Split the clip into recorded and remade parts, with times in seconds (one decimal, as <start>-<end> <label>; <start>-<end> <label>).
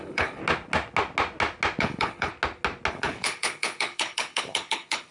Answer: 0.0-0.4 remade; 0.4-1.8 recorded; 1.8-2.3 remade; 2.3-2.9 recorded; 2.9-5.1 remade